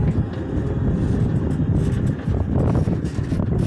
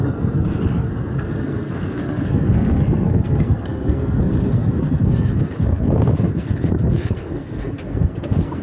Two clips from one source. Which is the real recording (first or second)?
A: first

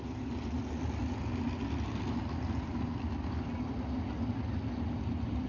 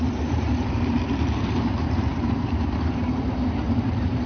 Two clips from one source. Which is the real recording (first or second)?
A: first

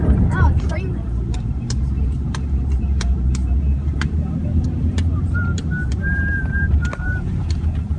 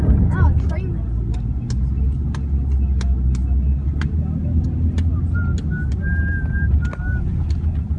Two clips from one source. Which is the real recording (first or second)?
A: second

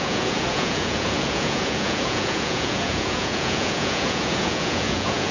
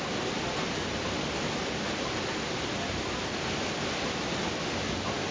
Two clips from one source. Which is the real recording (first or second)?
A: second